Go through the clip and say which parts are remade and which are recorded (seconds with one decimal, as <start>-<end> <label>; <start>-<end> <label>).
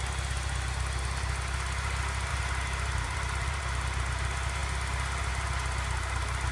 0.0-2.3 recorded; 2.3-3.6 remade; 3.6-6.5 recorded